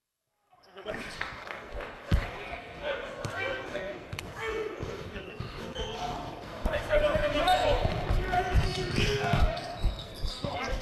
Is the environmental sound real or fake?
fake